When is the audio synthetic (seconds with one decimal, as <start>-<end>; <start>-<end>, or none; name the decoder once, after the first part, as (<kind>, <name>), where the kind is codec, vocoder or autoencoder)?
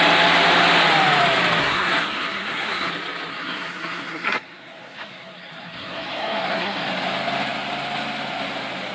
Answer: 1.6-2.9 (codec, SNAC); 3.3-6.9